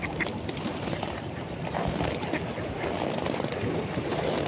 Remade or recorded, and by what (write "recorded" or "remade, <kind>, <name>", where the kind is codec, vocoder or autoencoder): recorded